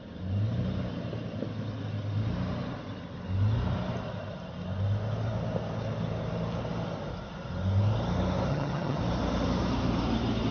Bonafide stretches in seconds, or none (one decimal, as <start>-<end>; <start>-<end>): 0.0-8.5; 9.0-10.5